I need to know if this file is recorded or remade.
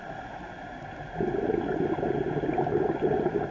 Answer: recorded